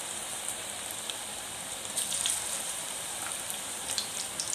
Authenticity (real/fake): fake